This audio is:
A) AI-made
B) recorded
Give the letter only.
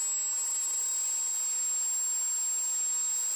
B